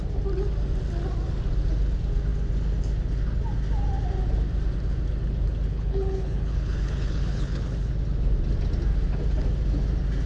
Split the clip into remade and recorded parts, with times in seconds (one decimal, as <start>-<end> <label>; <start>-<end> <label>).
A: 0.0-5.7 recorded; 5.7-7.9 remade; 7.9-10.3 recorded